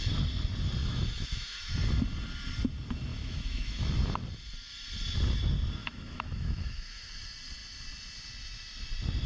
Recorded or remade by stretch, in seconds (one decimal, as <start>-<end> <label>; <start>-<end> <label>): 0.0-0.8 recorded; 0.8-1.7 remade; 1.7-3.1 recorded; 3.1-3.9 remade; 3.9-5.8 recorded; 5.8-7.1 remade; 7.1-9.3 recorded